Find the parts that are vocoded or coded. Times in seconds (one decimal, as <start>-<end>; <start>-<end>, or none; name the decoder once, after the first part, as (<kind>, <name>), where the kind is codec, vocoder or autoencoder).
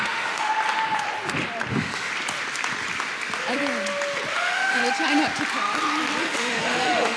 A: 0.0-0.5 (autoencoder, DAC-VAE); 1.7-2.1; 4.3-4.8; 6.2-7.2